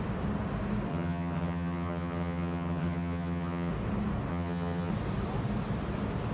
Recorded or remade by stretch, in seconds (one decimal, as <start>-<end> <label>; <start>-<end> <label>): 0.0-0.9 recorded; 0.9-3.7 remade; 3.7-4.3 recorded; 4.3-4.9 remade; 4.9-6.3 recorded